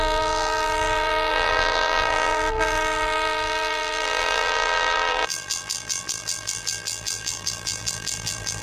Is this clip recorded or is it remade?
remade